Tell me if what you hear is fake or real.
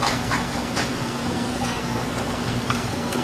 fake